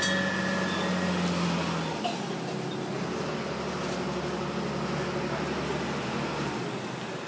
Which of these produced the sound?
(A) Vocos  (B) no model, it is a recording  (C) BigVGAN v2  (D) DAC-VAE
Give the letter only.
B